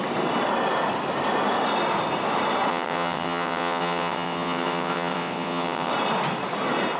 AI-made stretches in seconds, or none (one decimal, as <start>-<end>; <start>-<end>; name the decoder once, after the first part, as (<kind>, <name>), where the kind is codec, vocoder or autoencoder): 2.7-5.9 (vocoder, WaveNeXt)